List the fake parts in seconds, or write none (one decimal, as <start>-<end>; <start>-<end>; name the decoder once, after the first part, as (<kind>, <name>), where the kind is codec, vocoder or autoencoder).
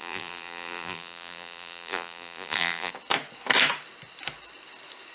0.0-2.9 (vocoder, BigVGAN v2)